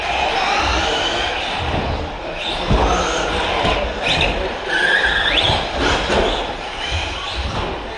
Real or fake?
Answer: real